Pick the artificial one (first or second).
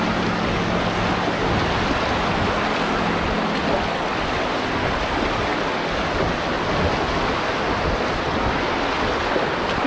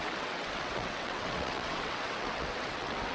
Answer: second